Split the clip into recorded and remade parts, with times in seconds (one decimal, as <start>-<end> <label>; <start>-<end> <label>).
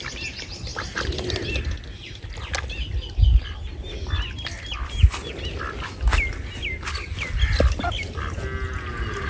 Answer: 0.0-9.3 recorded